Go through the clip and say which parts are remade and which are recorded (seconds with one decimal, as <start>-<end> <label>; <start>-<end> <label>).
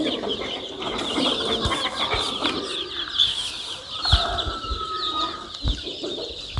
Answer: 0.0-1.3 remade; 1.3-3.8 recorded; 3.8-6.6 remade